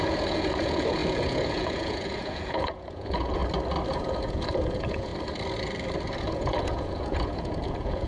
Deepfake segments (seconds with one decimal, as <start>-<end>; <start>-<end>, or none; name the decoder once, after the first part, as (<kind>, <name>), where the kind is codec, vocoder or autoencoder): 0.0-3.4 (vocoder, Vocos); 3.9-5.1; 6.2-8.1